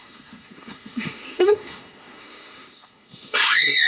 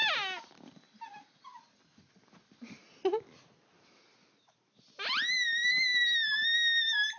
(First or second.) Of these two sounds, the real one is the second